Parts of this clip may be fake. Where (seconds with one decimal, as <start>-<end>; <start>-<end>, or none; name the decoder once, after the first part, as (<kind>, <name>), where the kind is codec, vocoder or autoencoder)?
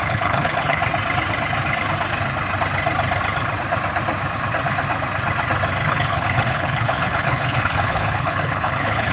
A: 0.0-0.8 (codec, HILCodec); 5.9-9.1